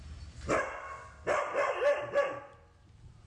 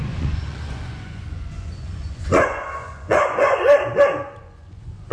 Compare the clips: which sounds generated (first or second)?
second